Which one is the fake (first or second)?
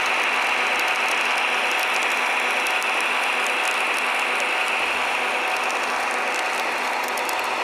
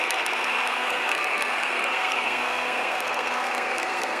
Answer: second